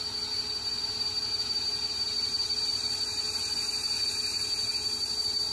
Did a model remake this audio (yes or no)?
no